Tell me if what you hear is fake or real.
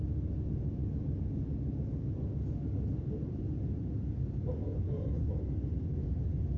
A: real